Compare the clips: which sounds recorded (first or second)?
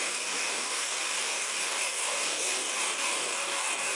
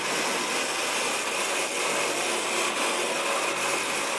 second